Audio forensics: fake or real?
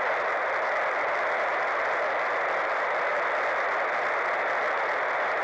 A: real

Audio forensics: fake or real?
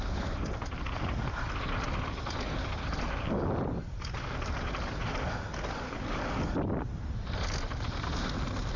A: real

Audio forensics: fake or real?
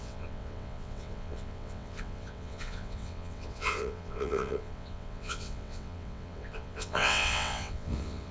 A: fake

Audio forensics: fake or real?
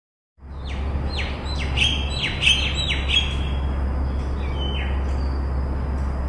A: real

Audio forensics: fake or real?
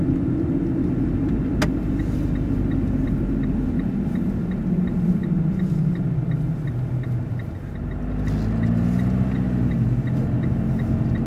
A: real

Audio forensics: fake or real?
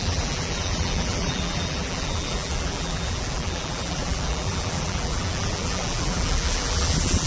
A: fake